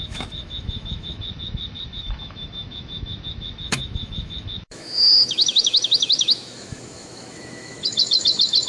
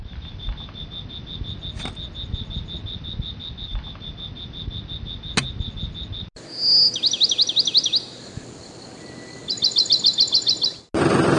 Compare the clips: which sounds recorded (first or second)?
second